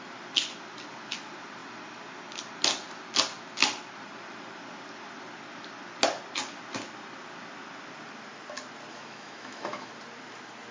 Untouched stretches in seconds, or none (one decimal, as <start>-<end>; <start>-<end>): 0.0-8.9; 9.9-10.7